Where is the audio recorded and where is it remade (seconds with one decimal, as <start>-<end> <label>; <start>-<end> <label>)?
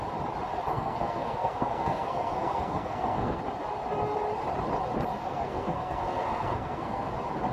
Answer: 0.0-0.7 recorded; 0.7-3.4 remade; 3.4-5.2 recorded; 5.2-7.1 remade; 7.1-7.5 recorded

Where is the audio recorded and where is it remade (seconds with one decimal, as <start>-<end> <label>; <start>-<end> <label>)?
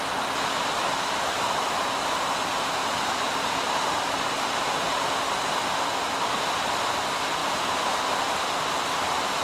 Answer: 0.0-2.8 recorded; 2.8-3.5 remade; 3.5-9.4 recorded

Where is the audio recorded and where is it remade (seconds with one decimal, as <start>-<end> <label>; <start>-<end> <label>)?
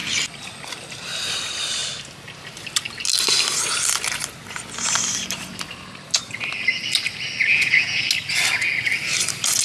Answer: 0.0-7.5 recorded; 7.5-8.1 remade; 8.1-9.6 recorded